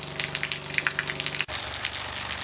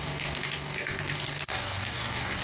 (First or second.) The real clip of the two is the first